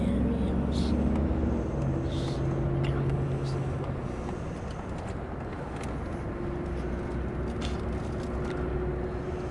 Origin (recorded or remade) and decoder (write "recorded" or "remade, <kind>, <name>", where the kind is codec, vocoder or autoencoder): recorded